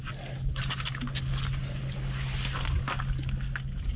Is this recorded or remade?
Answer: recorded